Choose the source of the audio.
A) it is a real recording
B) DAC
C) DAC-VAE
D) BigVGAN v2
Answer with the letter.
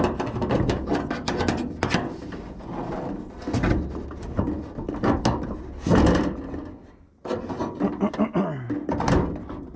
A